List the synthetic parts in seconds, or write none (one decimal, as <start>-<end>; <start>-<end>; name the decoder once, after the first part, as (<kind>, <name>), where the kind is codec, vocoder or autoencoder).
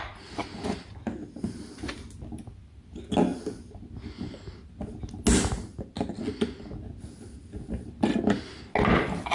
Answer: none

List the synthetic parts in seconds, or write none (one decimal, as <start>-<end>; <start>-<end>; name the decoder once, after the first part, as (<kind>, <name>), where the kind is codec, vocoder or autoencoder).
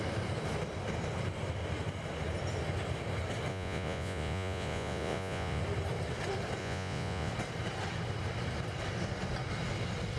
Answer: 3.5-5.6 (vocoder, Vocos); 6.6-7.3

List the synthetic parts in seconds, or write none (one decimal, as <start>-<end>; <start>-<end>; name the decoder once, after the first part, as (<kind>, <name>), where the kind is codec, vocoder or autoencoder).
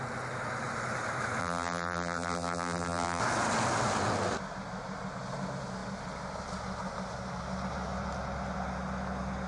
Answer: 1.4-3.2 (vocoder, BigVGAN v2)